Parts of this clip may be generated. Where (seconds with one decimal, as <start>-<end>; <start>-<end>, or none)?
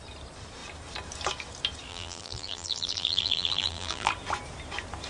1.9-4.1